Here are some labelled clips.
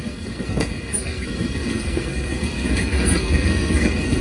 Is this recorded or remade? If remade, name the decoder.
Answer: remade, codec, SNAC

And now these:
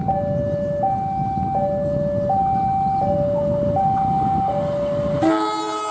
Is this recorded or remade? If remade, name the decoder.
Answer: recorded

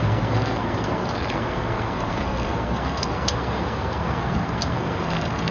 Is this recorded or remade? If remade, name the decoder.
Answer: remade, codec, SNAC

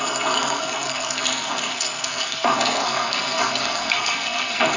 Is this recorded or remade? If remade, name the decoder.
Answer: remade, codec, SNAC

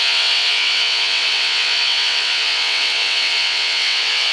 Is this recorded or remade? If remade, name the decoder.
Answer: remade, vocoder, WaveNeXt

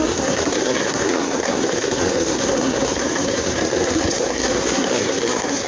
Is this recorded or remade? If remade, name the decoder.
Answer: remade, codec, SNAC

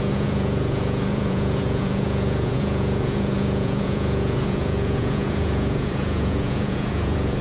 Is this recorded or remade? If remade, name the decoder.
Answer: remade, vocoder, Vocos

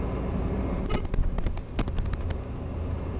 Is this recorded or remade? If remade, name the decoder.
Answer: recorded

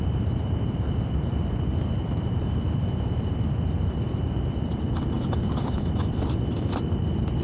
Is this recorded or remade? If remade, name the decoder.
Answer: recorded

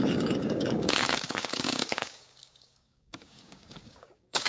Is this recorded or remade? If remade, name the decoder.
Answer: remade, codec, DAC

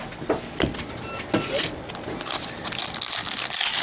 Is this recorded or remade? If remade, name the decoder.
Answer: recorded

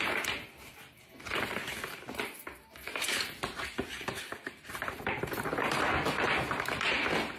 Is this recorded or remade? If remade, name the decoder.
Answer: recorded